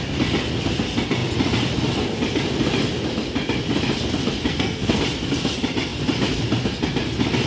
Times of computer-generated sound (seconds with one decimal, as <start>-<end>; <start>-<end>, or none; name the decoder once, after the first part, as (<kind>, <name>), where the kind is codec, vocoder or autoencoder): 4.5-5.0 (codec, SNAC)